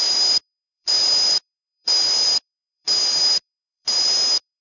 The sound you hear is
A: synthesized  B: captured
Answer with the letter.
A